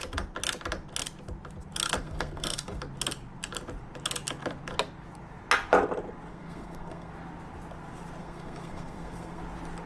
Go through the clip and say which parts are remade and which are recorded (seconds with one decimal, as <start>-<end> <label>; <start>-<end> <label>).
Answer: 0.0-2.0 recorded; 2.0-2.8 remade; 2.8-6.3 recorded; 6.3-7.1 remade; 7.1-8.2 recorded; 8.2-9.4 remade; 9.4-9.9 recorded